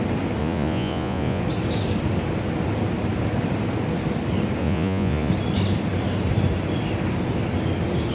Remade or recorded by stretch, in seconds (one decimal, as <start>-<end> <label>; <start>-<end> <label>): 0.0-0.4 recorded; 0.4-1.4 remade; 1.4-4.6 recorded; 4.6-5.3 remade; 5.3-8.1 recorded